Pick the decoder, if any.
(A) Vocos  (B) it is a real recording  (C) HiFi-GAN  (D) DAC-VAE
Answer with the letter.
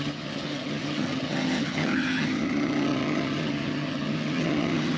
C